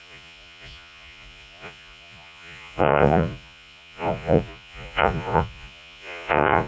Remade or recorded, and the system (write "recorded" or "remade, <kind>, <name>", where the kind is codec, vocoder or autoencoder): remade, vocoder, Vocos